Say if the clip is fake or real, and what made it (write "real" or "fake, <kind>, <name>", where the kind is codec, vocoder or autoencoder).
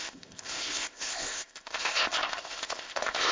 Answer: fake, codec, ZipCodec